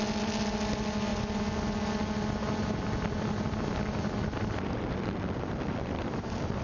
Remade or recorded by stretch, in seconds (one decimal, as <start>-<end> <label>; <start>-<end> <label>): 0.0-6.6 recorded